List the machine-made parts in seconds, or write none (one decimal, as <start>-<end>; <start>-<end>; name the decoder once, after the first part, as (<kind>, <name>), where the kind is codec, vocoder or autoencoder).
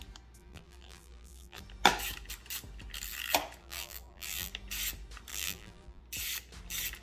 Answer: 0.4-1.6 (vocoder, BigVGAN v2); 3.6-4.5; 5.3-6.0